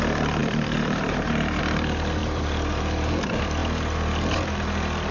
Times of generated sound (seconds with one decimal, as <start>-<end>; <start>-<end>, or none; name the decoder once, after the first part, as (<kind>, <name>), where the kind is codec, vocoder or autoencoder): 0.4-1.6 (vocoder, BigVGAN v2); 2.2-2.8